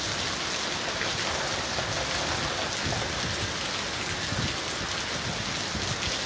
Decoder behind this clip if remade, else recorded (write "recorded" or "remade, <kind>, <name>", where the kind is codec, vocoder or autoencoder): recorded